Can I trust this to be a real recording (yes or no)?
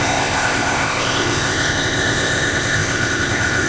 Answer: no